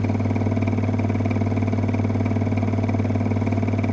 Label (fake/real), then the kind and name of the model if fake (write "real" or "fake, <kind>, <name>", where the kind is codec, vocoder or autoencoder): real